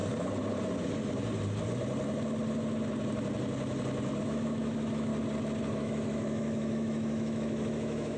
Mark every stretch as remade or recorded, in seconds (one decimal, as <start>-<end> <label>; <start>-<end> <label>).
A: 0.0-4.2 recorded; 4.2-5.1 remade; 5.1-5.7 recorded; 5.7-8.2 remade